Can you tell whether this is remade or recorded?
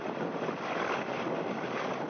recorded